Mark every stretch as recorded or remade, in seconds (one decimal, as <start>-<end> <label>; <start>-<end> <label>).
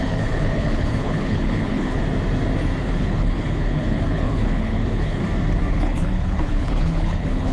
0.0-2.0 remade; 2.0-2.8 recorded; 2.8-5.2 remade; 5.2-5.7 recorded; 5.7-7.5 remade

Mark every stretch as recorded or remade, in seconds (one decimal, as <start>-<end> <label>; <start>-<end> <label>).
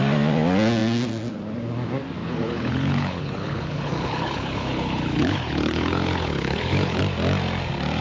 0.0-2.2 recorded; 2.2-7.0 remade; 7.0-8.0 recorded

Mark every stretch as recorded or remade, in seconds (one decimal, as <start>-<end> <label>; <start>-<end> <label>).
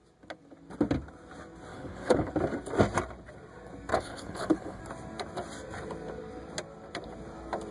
0.0-1.7 recorded; 1.7-2.3 remade; 2.3-3.9 recorded; 3.9-4.8 remade; 4.8-7.7 recorded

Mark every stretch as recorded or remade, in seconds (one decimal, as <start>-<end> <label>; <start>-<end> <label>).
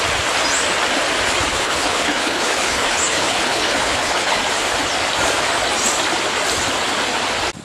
0.0-1.5 recorded; 1.5-4.4 remade; 4.4-7.6 recorded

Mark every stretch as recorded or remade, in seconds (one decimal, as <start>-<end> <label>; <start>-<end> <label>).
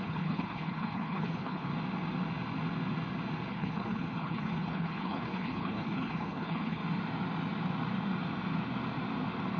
0.0-1.7 remade; 1.7-3.5 recorded; 3.5-6.8 remade; 6.8-9.6 recorded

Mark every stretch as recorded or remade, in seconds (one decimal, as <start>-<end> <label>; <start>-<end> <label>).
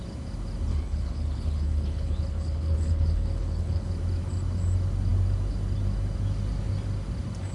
0.0-0.7 recorded; 0.7-3.9 remade; 3.9-7.5 recorded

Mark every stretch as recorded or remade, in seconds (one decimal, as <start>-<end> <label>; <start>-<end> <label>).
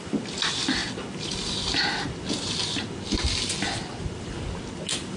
0.0-5.2 recorded